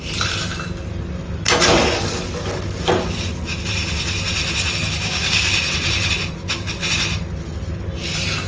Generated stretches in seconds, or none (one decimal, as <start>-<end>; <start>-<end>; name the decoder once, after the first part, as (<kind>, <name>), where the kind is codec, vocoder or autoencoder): 5.0-5.5 (codec, DAC)